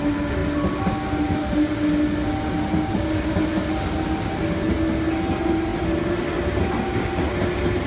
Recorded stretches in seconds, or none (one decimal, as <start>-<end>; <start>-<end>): 0.0-7.9